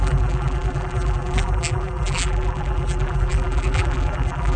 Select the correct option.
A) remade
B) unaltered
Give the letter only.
A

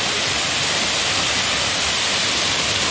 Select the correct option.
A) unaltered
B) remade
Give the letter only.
A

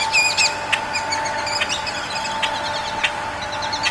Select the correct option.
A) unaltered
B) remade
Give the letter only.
A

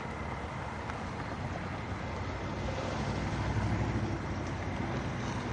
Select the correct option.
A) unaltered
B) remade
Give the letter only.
A